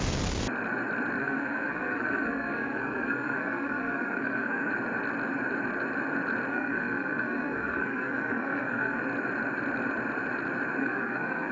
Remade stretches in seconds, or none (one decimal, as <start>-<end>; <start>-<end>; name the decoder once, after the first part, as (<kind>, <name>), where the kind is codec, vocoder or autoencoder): 1.2-4.7 (codec, SNAC); 6.5-9.0; 10.8-11.5

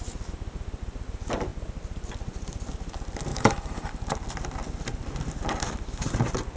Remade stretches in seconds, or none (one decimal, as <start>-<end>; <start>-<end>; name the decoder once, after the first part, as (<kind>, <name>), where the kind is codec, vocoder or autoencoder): 3.3-3.9 (autoencoder, DAC-VAE)

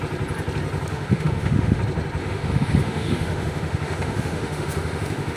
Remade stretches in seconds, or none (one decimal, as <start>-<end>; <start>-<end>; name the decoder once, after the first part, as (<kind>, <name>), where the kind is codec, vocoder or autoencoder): 0.9-1.8 (autoencoder, DAC-VAE); 2.2-5.4

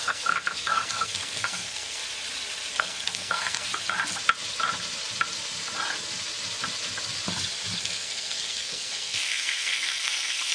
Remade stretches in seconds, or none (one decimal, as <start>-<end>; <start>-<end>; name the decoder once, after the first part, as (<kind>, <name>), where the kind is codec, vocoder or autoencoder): 0.0-2.0 (codec, SNAC); 2.7-3.7; 7.8-10.5

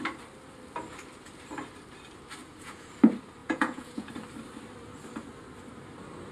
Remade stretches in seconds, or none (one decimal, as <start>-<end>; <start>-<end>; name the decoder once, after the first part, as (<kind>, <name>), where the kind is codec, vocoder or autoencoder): 2.4-2.9 (vocoder, Vocos); 3.4-4.1